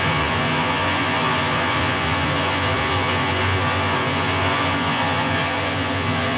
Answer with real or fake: fake